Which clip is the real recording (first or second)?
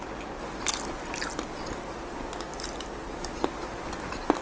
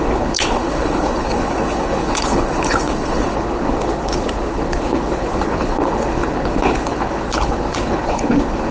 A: first